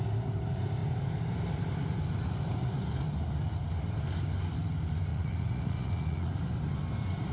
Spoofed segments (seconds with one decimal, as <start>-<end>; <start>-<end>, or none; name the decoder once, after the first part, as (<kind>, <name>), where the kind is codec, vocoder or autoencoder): 5.1-6.3 (vocoder, Vocos)